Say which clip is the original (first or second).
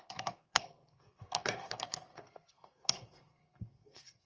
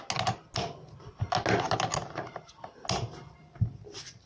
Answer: second